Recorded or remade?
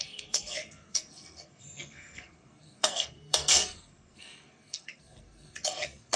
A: remade